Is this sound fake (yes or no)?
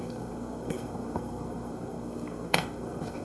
yes